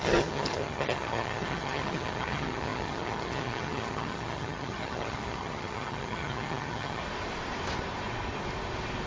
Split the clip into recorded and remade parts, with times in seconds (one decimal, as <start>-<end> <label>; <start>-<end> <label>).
0.0-7.0 remade; 7.0-9.1 recorded